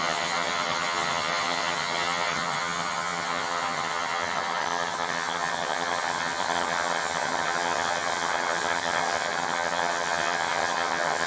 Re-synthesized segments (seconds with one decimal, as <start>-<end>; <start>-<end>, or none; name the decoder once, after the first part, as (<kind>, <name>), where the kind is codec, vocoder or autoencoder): 0.0-11.3 (vocoder, HiFi-GAN)